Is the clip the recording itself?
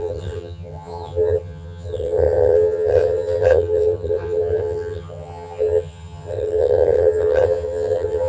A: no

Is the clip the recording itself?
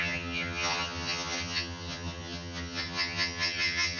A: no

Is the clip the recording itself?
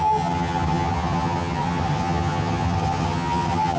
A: no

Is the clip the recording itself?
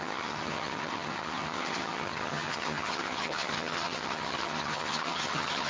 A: no